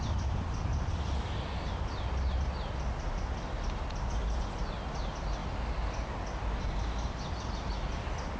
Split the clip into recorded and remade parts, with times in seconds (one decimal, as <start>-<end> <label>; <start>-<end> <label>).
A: 0.0-8.4 recorded